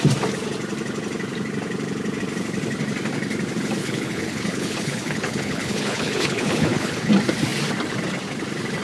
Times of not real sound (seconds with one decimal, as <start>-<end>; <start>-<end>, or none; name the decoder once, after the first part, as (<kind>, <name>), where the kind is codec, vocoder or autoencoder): 3.8-7.1 (codec, HILCodec)